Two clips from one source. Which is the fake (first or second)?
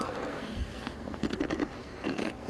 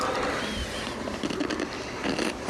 first